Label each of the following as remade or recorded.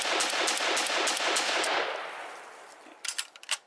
recorded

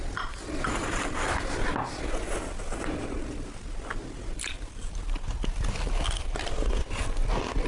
recorded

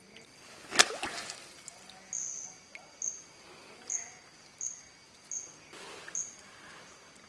recorded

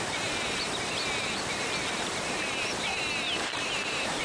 remade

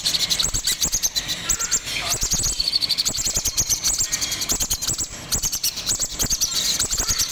recorded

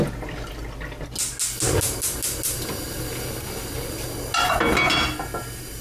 recorded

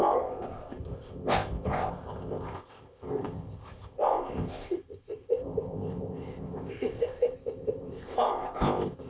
remade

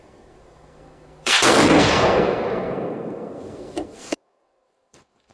remade